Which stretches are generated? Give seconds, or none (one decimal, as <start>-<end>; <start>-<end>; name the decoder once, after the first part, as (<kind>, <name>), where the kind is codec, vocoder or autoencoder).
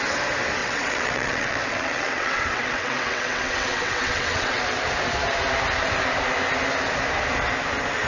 0.6-4.6 (vocoder, WaveNeXt)